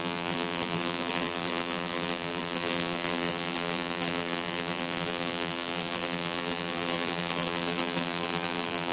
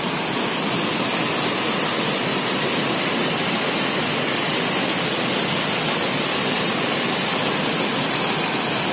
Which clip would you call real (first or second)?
second